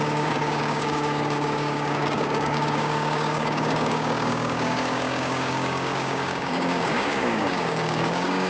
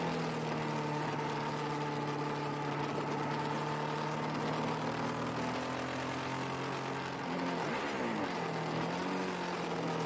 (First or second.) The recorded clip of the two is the second